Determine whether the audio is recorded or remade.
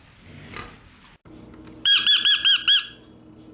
recorded